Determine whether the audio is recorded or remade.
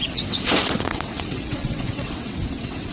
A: remade